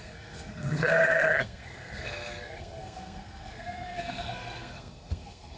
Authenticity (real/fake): fake